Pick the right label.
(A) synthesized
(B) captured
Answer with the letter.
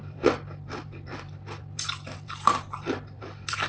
A